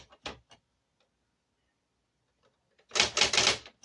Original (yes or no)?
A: yes